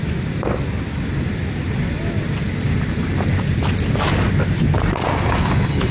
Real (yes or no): yes